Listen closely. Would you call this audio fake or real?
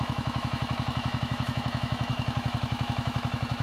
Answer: fake